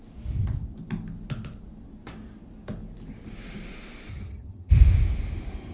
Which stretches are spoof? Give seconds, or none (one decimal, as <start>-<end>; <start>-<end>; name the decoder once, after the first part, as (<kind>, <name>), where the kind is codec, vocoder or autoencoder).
4.1-4.7 (vocoder, HiFi-GAN)